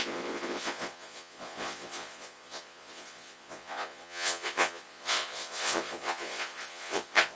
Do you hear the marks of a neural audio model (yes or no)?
yes